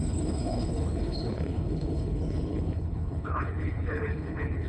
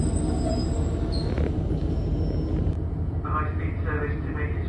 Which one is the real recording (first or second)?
second